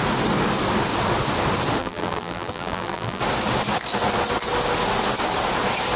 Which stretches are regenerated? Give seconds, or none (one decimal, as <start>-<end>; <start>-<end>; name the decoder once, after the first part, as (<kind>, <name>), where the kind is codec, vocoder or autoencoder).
1.8-3.2 (vocoder, BigVGAN v2)